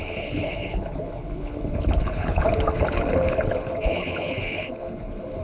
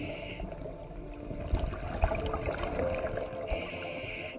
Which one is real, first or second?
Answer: second